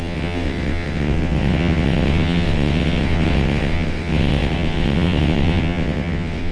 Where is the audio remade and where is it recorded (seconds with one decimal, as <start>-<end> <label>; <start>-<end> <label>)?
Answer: 0.0-6.5 remade